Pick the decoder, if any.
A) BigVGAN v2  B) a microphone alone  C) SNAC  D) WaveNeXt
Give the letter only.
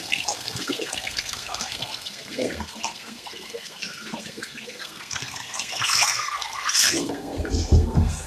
C